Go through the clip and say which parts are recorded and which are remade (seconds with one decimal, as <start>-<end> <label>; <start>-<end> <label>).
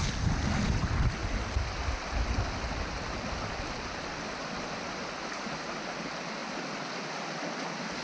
0.0-8.0 recorded